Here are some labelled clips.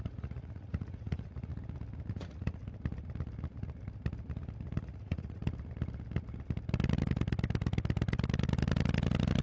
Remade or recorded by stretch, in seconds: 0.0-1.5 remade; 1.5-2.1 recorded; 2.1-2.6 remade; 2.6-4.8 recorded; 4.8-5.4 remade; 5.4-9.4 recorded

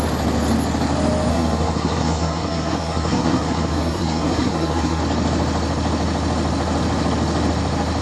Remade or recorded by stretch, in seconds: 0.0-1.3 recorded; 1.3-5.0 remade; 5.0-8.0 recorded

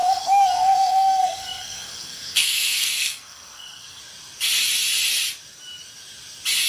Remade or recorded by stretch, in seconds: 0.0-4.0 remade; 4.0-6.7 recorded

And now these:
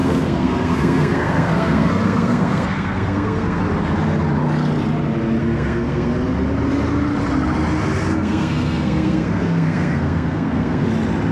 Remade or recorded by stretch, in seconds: 0.0-3.6 remade; 3.6-5.4 recorded; 5.4-6.1 remade; 6.1-8.1 recorded; 8.1-10.9 remade; 10.9-11.3 recorded